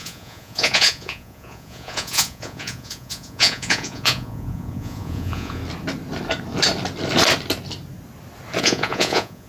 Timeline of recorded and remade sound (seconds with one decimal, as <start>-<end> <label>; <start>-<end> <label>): 0.0-5.6 remade; 5.6-8.6 recorded; 8.6-9.5 remade

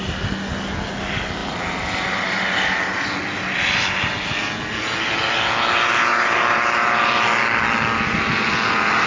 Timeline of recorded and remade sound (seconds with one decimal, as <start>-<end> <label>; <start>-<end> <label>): 0.0-9.1 recorded

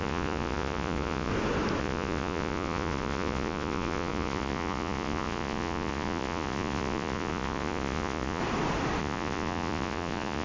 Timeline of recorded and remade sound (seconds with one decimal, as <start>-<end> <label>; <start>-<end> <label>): 0.0-1.3 remade; 1.3-1.8 recorded; 1.8-8.4 remade; 8.4-9.0 recorded; 9.0-10.4 remade

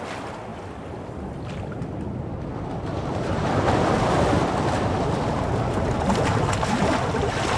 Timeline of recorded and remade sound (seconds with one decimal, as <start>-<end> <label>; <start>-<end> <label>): 0.0-7.6 recorded

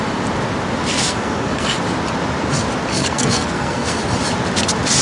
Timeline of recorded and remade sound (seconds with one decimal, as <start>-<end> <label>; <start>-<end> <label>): 0.0-0.9 recorded; 0.9-1.8 remade; 1.8-2.9 recorded; 2.9-4.0 remade; 4.0-5.0 recorded

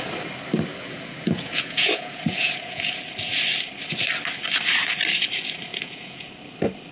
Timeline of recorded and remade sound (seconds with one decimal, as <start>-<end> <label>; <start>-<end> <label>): 0.0-0.7 recorded; 0.7-2.9 remade; 2.9-5.7 recorded; 5.7-6.3 remade; 6.3-6.9 recorded